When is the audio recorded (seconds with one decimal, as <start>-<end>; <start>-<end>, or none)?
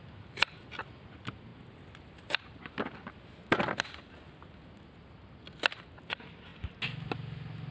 0.0-7.7